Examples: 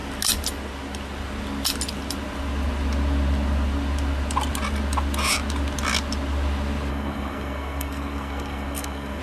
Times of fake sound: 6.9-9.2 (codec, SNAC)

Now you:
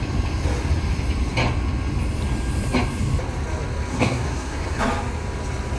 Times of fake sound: 3.9-4.8 (codec, SNAC)

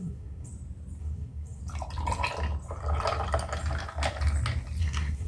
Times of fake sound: 0.0-0.5 (codec, SNAC); 1.0-1.6; 4.8-5.3

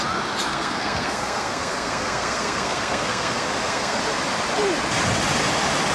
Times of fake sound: 0.5-4.0 (codec, SNAC)

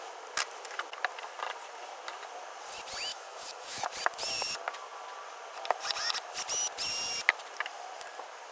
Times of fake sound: 3.1-3.8 (autoencoder, DAC-VAE)